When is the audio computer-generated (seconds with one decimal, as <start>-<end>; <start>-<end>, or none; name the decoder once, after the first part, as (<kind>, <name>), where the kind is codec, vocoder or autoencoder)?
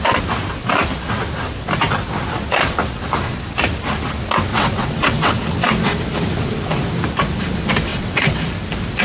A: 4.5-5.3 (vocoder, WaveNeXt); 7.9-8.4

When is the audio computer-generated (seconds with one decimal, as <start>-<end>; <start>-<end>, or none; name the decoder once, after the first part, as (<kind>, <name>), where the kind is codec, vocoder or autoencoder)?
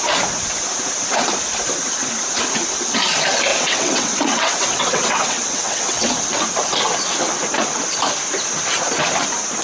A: 3.5-6.1 (vocoder, WaveNeXt)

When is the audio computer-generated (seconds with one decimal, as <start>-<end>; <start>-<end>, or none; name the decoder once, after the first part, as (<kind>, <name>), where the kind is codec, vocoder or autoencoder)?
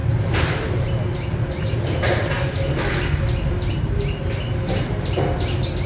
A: none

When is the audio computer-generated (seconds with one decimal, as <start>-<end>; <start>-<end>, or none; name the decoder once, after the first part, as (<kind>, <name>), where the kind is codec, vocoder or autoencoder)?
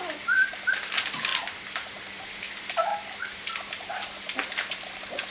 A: none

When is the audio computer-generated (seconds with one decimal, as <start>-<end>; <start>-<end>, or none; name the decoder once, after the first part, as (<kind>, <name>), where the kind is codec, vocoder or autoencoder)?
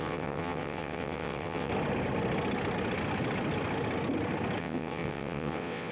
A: 0.0-1.7 (vocoder, WaveNeXt); 4.6-5.9